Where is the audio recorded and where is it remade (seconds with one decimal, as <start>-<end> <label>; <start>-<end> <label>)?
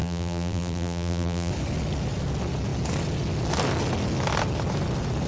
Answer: 0.0-1.5 remade; 1.5-5.3 recorded